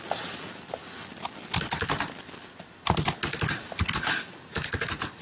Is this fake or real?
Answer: real